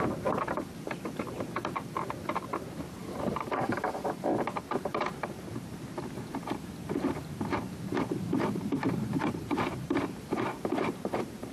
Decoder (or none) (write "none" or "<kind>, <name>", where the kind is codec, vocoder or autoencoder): vocoder, BigVGAN v2